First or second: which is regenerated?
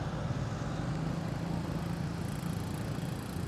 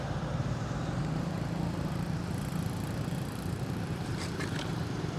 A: second